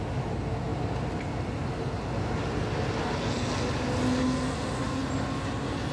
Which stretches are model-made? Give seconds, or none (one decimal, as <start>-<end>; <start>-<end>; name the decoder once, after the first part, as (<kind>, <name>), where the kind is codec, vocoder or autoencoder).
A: none